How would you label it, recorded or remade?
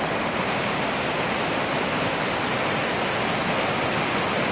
recorded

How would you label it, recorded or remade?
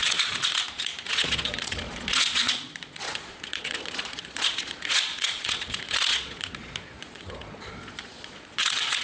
remade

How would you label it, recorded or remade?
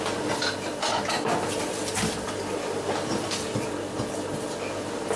recorded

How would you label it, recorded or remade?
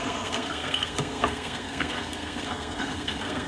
remade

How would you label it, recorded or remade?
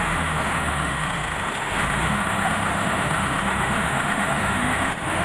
remade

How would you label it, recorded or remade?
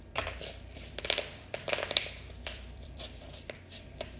remade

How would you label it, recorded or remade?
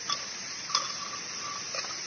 recorded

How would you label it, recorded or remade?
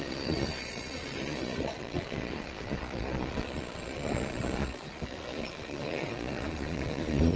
remade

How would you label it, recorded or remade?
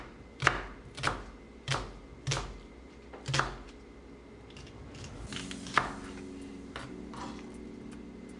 recorded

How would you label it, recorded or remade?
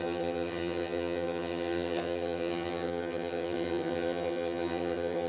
remade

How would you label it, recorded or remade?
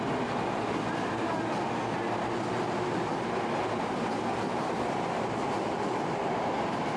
recorded